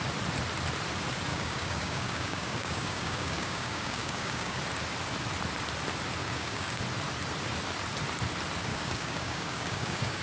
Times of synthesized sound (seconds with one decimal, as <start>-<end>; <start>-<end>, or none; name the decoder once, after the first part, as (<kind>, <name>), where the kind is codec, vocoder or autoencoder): 1.3-4.6 (codec, DAC); 6.2-6.8; 8.7-10.2